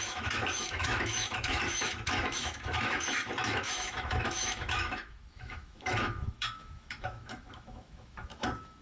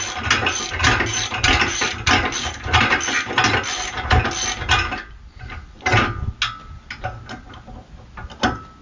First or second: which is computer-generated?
first